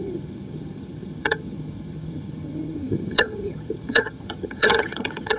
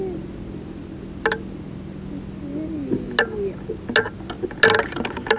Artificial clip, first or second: first